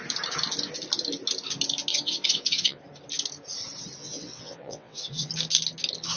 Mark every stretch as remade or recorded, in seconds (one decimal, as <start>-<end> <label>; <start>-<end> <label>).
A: 0.0-1.9 recorded; 1.9-2.8 remade; 2.8-4.0 recorded; 4.0-5.3 remade; 5.3-6.2 recorded